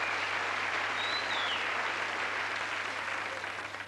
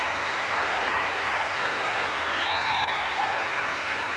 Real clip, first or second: first